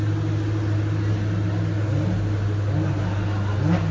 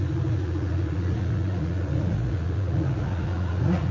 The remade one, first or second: second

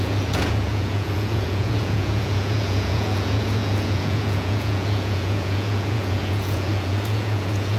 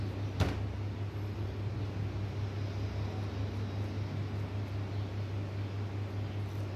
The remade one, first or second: first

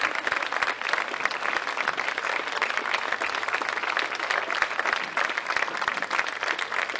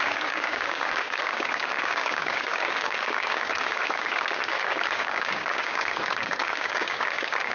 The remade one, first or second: second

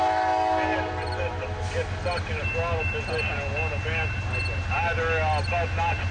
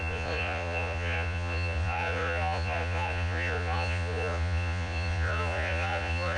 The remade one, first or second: second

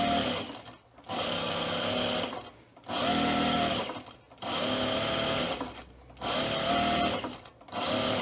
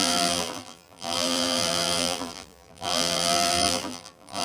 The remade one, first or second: second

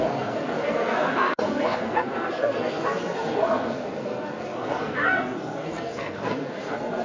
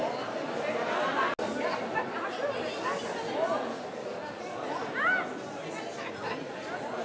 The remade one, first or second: first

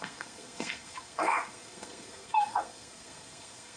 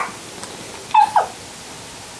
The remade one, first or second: first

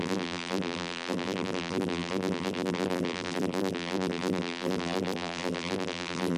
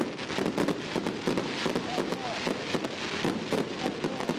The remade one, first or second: first